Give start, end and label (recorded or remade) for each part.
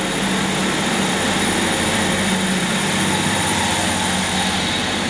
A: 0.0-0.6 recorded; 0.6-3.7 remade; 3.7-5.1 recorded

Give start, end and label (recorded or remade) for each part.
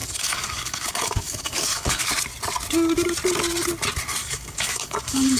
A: 0.0-2.0 remade; 2.0-4.2 recorded; 4.2-5.4 remade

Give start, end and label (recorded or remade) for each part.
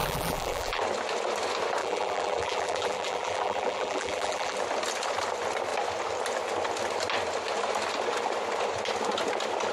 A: 0.0-0.8 remade; 0.8-1.8 recorded; 1.8-4.6 remade; 4.6-9.7 recorded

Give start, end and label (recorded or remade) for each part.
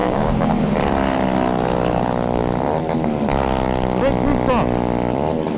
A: 0.0-0.5 remade; 0.5-5.6 recorded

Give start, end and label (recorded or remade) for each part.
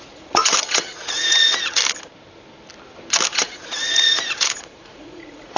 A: 0.0-1.8 remade; 1.8-3.3 recorded; 3.3-5.6 remade